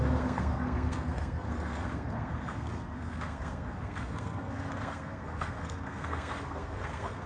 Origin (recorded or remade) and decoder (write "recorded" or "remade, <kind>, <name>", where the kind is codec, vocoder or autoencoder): remade, codec, SNAC